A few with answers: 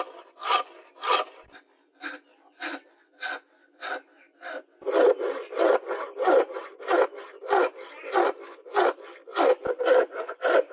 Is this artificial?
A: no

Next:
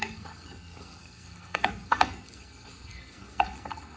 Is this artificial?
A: yes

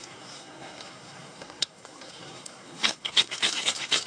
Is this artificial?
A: yes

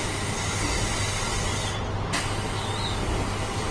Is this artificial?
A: no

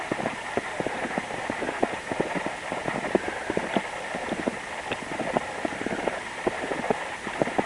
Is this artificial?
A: no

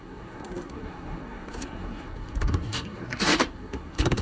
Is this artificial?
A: yes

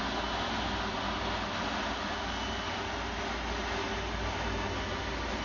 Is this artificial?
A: no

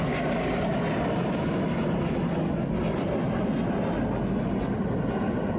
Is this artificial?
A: no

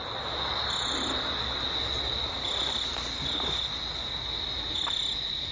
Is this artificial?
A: no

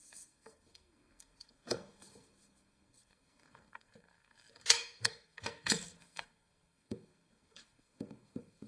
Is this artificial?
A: yes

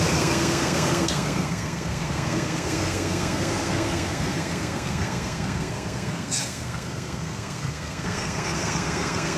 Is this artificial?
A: yes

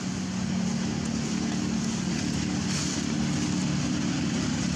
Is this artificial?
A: no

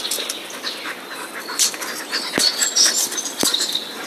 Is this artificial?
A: no